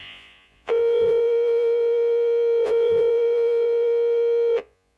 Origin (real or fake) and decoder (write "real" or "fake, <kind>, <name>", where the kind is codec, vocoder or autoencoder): fake, vocoder, Vocos